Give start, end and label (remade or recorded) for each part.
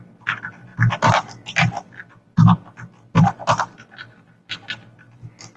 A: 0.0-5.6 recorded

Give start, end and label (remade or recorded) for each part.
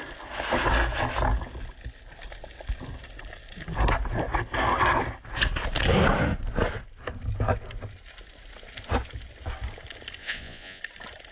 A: 0.0-10.2 recorded; 10.2-10.8 remade; 10.8-11.3 recorded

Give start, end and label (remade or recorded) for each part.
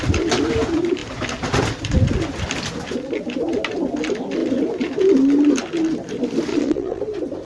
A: 0.0-6.5 recorded; 6.5-7.0 remade; 7.0-7.4 recorded